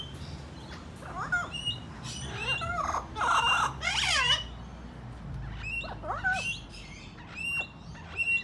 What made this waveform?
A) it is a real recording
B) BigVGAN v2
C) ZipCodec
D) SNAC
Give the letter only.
A